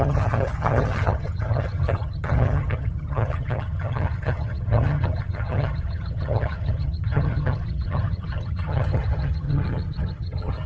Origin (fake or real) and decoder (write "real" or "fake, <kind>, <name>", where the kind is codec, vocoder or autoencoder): fake, vocoder, HiFi-GAN